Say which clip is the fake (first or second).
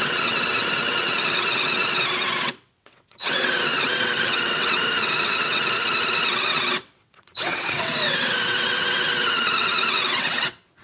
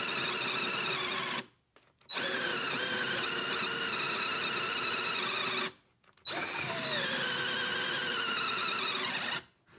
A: first